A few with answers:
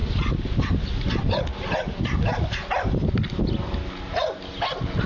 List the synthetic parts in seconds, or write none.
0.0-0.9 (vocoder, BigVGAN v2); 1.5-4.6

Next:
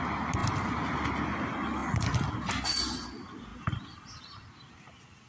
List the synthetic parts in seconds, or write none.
0.4-0.9 (vocoder, BigVGAN v2); 3.5-4.2

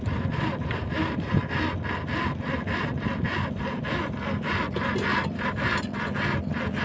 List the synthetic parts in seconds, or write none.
0.0-1.4 (vocoder, BigVGAN v2); 2.8-6.8

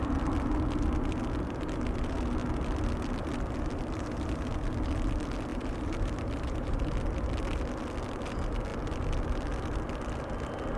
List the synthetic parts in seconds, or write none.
5.5-6.8 (vocoder, BigVGAN v2)

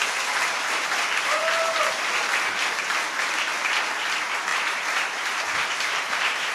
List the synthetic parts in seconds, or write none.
4.5-6.5 (vocoder, BigVGAN v2)

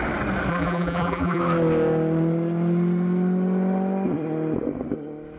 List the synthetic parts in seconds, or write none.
0.5-1.4 (vocoder, BigVGAN v2)

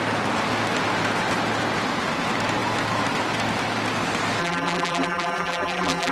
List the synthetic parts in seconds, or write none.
4.4-6.1 (vocoder, BigVGAN v2)

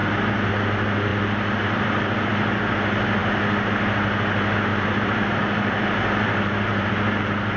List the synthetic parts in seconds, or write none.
4.7-6.9 (vocoder, BigVGAN v2)